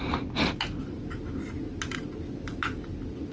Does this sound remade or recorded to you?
recorded